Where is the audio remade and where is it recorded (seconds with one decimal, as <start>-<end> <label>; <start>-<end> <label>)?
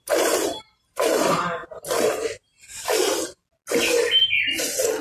0.0-1.6 remade; 1.6-4.6 recorded; 4.6-5.0 remade